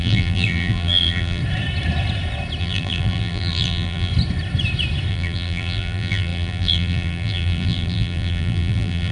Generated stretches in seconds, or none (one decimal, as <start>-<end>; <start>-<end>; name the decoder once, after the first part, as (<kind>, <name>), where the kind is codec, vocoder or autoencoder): 0.0-1.4 (vocoder, BigVGAN v2); 2.6-4.1; 5.1-9.1